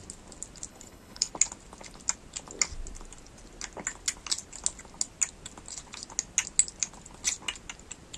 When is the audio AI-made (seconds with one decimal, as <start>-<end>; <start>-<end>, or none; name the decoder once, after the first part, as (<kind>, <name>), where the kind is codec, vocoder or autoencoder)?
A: 0.7-1.3 (codec, HILCodec)